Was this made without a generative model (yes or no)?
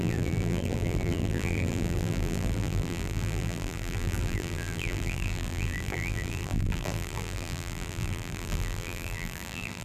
no